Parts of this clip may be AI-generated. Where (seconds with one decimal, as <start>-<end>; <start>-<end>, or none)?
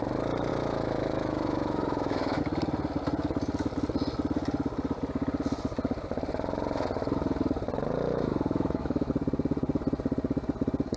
0.5-2.4; 8.1-9.1